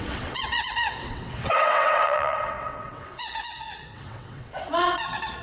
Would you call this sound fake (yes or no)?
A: yes